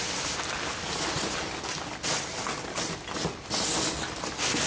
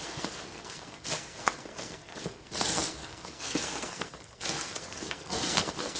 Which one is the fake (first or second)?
second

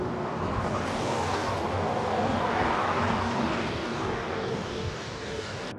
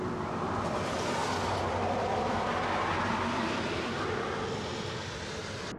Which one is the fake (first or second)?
first